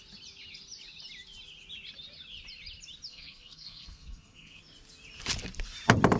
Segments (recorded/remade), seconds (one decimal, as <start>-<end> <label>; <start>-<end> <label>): 0.0-3.1 recorded; 3.1-4.6 remade; 4.6-6.2 recorded

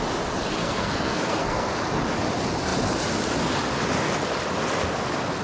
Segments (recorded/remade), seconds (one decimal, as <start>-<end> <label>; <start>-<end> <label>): 0.0-0.6 recorded; 0.6-1.7 remade; 1.7-5.4 recorded

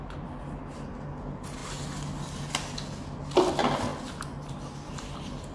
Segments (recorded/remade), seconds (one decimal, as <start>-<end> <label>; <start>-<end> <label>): 0.0-5.5 recorded